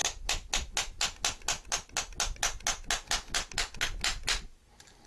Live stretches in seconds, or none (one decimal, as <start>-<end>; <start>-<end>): 0.0-5.1

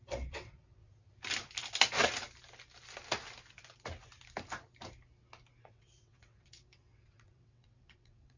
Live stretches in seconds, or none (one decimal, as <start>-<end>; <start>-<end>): 0.8-5.6

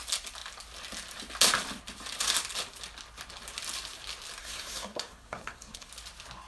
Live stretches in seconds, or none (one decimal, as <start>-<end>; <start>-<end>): 0.0-4.4; 5.9-6.5

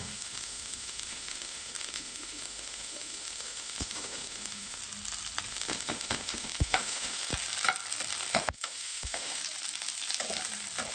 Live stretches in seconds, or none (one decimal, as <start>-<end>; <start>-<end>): 4.8-5.5; 7.3-8.3; 9.4-10.9